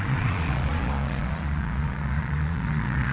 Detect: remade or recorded remade